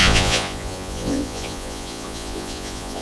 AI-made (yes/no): yes